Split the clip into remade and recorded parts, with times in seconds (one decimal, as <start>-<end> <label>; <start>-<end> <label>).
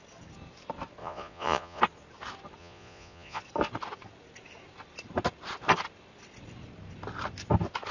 0.0-1.0 recorded; 1.0-1.8 remade; 1.8-2.6 recorded; 2.6-3.4 remade; 3.4-7.9 recorded